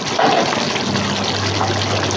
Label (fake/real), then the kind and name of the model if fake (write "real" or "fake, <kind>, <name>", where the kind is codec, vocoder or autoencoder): real